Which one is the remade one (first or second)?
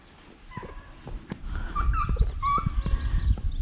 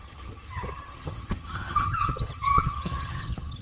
second